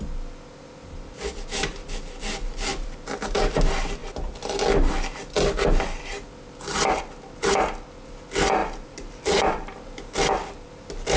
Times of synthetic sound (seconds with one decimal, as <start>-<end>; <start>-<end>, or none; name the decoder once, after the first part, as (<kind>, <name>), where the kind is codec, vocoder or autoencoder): 2.7-3.4 (vocoder, BigVGAN v2); 8.6-10.2